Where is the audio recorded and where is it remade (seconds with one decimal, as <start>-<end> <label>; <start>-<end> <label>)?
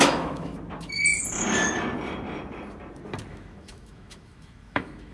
0.0-0.5 remade; 0.5-3.3 recorded; 3.3-5.1 remade